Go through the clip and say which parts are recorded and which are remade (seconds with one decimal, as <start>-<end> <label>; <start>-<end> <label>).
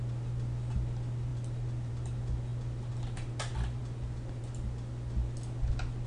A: 0.0-6.1 recorded